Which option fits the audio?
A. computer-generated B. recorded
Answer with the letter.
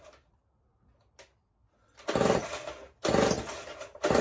B